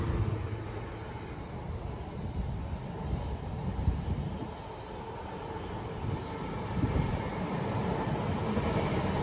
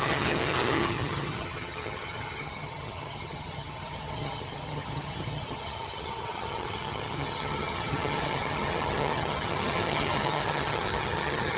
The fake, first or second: second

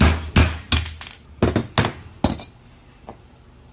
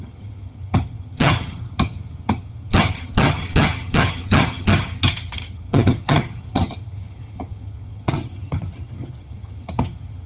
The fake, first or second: second